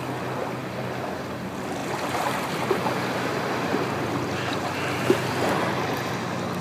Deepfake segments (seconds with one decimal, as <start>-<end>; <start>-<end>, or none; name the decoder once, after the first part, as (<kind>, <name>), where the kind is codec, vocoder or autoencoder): 0.6-1.2 (vocoder, BigVGAN v2); 1.8-5.7